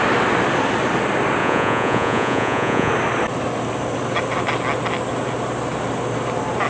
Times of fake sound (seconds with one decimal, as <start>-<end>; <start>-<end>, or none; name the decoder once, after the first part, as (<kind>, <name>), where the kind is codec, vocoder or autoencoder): 1.4-2.9 (vocoder, Vocos)